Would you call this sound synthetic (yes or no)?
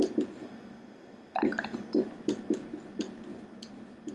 no